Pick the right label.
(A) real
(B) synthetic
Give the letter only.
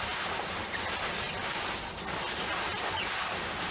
A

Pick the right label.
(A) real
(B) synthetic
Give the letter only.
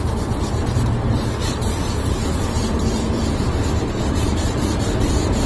B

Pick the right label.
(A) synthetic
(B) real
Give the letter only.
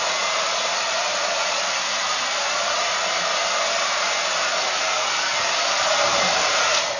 A